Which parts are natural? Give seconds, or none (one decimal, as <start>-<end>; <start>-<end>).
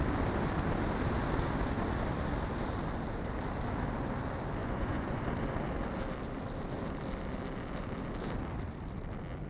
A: 0.0-4.6; 5.2-9.5